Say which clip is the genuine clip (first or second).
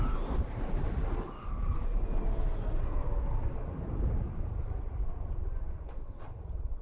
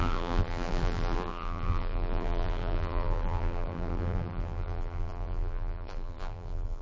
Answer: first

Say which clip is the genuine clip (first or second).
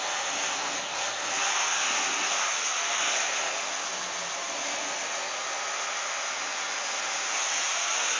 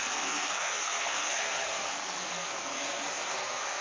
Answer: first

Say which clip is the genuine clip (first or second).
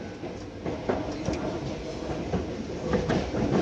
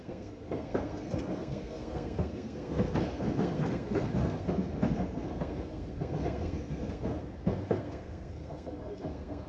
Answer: first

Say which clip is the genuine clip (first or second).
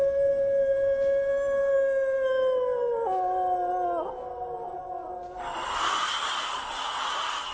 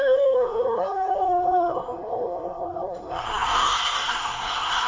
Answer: first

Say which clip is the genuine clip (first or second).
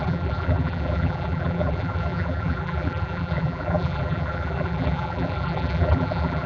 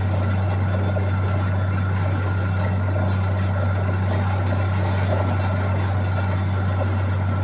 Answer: second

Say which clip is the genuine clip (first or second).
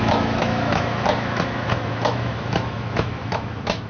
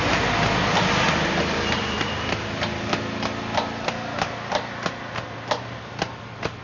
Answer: second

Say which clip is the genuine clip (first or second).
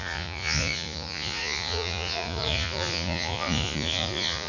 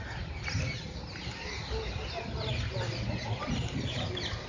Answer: second